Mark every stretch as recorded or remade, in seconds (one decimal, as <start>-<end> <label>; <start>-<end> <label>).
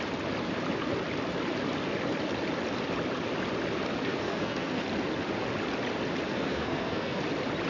0.0-4.1 recorded; 4.1-4.8 remade; 4.8-6.3 recorded; 6.3-7.2 remade; 7.2-7.7 recorded